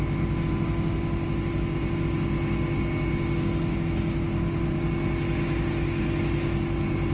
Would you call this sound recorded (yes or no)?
yes